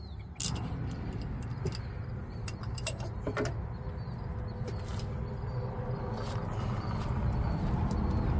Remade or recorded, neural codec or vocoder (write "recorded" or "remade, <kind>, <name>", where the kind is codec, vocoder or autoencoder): recorded